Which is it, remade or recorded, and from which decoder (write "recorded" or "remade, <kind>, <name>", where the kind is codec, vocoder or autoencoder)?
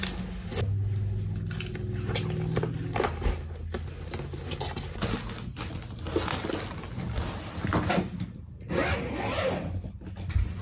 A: recorded